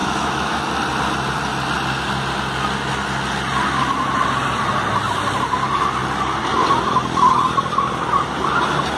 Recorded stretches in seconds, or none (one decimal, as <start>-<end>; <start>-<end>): 0.6-9.0